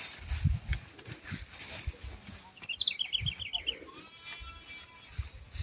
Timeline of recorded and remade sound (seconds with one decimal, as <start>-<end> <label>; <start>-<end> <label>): 0.0-5.6 recorded